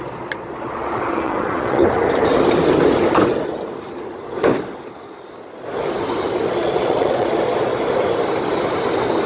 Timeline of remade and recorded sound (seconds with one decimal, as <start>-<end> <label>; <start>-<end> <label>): 0.0-1.8 remade; 1.8-6.5 recorded; 6.5-7.7 remade; 7.7-9.3 recorded